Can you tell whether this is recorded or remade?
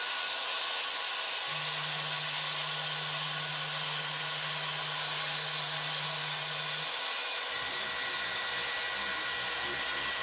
recorded